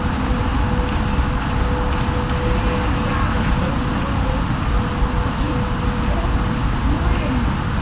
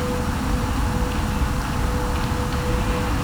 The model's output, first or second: first